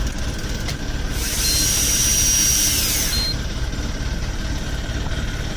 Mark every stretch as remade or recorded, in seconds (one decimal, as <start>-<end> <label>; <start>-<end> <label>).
0.0-5.6 recorded